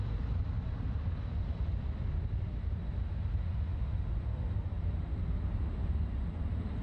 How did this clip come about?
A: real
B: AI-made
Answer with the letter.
A